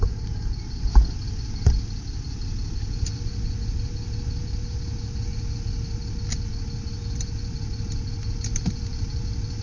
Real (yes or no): yes